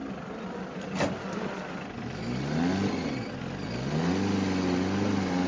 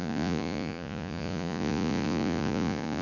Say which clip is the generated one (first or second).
second